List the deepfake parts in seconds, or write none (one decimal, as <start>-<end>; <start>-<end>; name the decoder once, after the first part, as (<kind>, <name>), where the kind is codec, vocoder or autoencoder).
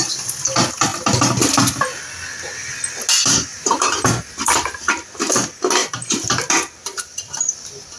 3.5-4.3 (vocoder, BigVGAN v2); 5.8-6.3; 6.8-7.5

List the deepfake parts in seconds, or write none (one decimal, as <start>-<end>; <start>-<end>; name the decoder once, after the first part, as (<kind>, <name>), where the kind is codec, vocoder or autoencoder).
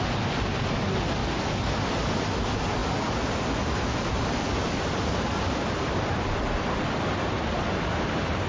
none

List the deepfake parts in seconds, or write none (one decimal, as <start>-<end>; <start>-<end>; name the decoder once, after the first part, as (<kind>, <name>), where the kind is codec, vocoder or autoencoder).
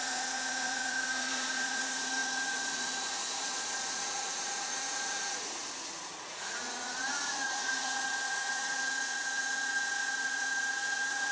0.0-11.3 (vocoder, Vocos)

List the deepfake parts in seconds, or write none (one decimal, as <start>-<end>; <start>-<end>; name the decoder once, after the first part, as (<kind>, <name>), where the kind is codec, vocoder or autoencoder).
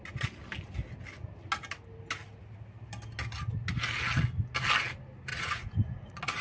5.3-6.4 (vocoder, Vocos)